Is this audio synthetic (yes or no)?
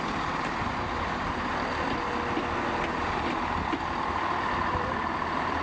no